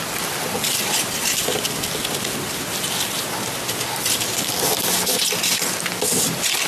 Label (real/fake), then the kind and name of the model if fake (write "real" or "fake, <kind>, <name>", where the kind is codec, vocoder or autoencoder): real